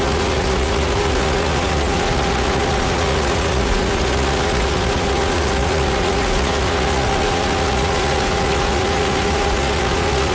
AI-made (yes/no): yes